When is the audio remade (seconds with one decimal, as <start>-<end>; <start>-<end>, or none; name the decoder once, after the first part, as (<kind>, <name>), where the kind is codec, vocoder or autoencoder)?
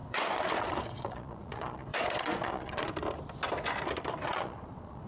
0.0-2.9 (vocoder, Vocos); 4.3-5.1